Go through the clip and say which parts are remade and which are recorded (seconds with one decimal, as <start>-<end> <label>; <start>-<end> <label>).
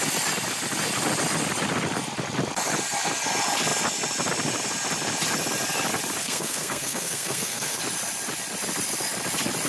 0.0-6.2 recorded; 6.2-7.8 remade; 7.8-9.7 recorded